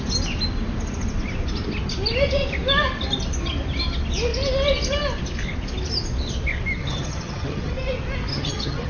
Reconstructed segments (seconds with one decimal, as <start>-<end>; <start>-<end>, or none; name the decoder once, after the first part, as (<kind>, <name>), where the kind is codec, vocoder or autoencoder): 6.8-7.7 (vocoder, HiFi-GAN); 8.3-8.9

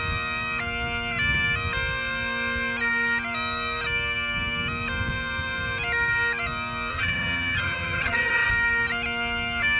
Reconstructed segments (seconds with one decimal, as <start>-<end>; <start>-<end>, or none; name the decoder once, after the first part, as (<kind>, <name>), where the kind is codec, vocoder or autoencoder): 6.9-8.5 (vocoder, HiFi-GAN)